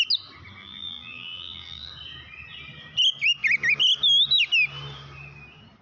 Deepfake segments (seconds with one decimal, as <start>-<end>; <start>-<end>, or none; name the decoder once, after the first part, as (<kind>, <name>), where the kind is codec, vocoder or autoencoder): 0.6-1.9 (vocoder, BigVGAN v2)